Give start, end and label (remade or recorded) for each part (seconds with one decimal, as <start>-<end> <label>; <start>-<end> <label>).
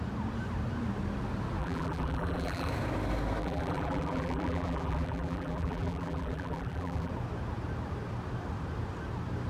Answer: 0.0-1.6 recorded; 1.6-2.7 remade; 2.7-3.4 recorded; 3.4-7.1 remade; 7.1-9.5 recorded